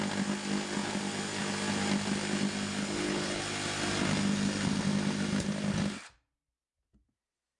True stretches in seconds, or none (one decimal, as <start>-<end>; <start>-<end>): 0.0-2.8; 3.4-7.6